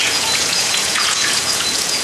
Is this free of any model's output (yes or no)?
no